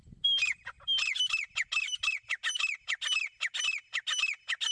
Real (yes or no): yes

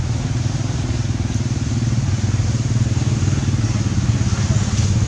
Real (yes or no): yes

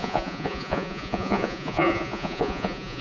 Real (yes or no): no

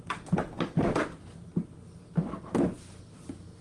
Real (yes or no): yes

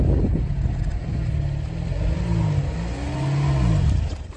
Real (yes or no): yes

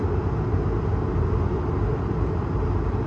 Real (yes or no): yes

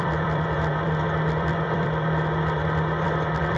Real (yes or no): no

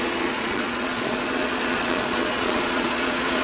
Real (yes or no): no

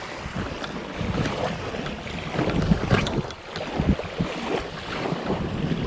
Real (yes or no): yes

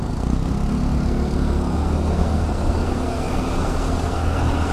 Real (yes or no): no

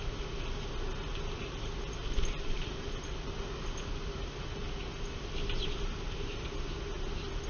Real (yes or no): yes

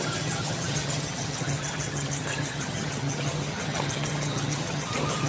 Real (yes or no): no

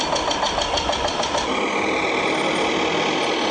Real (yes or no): yes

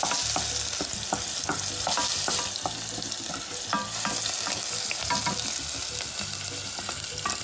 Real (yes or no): yes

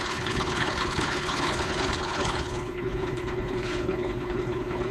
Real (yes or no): no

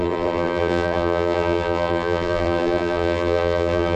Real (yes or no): no